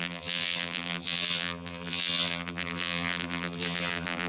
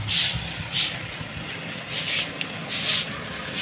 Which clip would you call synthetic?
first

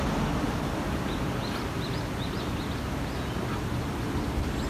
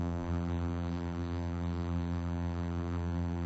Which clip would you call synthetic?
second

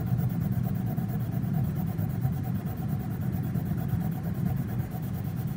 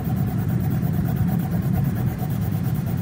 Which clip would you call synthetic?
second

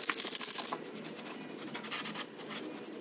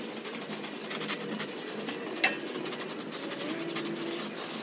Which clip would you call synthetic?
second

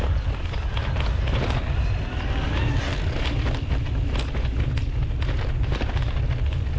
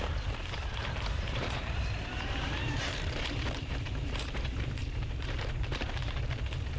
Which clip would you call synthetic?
second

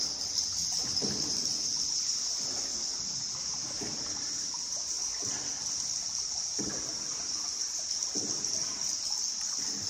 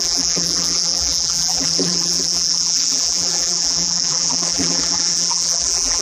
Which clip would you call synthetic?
second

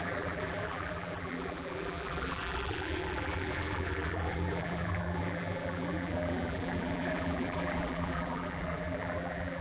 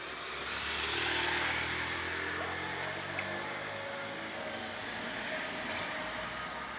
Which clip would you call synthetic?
first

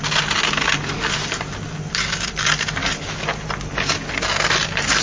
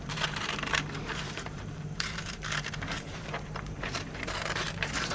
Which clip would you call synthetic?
second